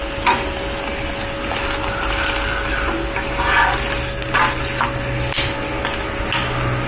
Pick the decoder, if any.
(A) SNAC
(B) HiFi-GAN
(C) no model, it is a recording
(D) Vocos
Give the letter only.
C